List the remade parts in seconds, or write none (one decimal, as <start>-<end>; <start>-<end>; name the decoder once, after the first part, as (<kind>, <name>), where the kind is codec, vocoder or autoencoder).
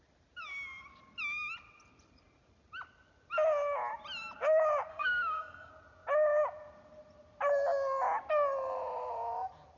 4.9-5.7 (codec, SNAC)